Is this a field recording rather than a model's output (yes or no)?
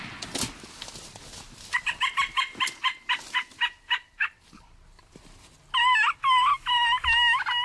yes